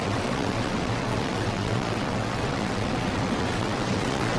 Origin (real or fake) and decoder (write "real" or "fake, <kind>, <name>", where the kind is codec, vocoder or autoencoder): fake, vocoder, WaveNeXt